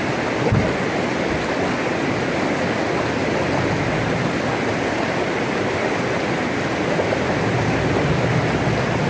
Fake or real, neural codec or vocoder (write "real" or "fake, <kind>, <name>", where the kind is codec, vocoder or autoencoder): real